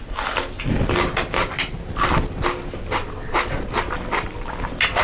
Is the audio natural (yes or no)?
yes